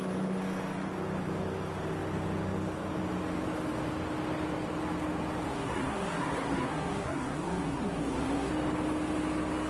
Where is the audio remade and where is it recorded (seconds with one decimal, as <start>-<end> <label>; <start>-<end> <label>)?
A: 0.0-5.5 recorded; 5.5-8.5 remade; 8.5-9.7 recorded